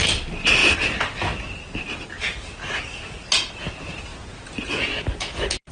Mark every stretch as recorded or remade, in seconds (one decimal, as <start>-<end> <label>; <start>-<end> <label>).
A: 0.0-4.1 recorded; 4.1-5.0 remade; 5.0-5.7 recorded